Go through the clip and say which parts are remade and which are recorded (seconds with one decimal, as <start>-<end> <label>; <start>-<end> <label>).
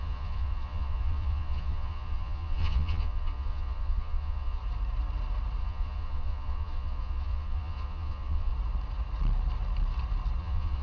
0.0-4.6 remade; 4.6-5.6 recorded; 5.6-8.5 remade; 8.5-10.4 recorded; 10.4-10.8 remade